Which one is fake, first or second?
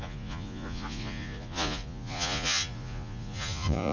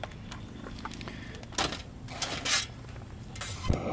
first